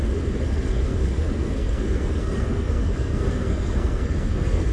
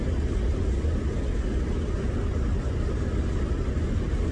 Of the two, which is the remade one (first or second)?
first